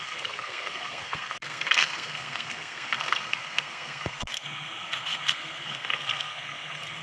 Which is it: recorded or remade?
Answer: remade